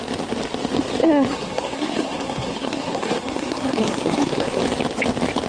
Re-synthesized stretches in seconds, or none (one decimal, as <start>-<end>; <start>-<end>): 1.3-4.6